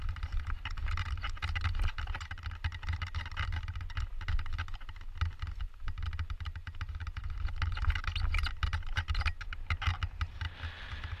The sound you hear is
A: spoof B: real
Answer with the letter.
B